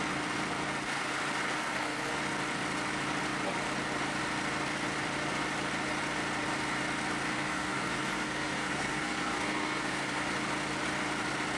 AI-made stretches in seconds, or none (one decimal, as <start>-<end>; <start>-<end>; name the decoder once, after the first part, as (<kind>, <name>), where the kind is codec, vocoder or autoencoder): 1.6-2.2 (codec, SNAC); 7.3-10.2